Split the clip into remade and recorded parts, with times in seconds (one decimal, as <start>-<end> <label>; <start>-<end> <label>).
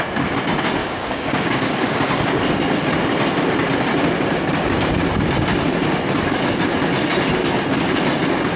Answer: 0.0-0.8 recorded; 0.8-2.1 remade; 2.1-8.6 recorded